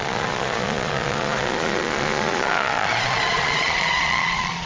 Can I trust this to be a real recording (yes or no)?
no